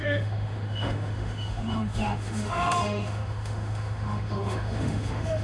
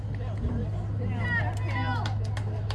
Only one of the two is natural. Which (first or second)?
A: second